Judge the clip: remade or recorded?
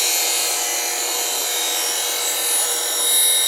recorded